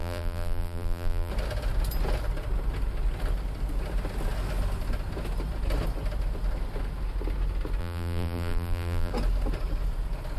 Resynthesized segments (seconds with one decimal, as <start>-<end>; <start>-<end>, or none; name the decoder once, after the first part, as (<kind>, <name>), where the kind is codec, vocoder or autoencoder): 0.0-1.3 (vocoder, BigVGAN v2); 7.8-9.1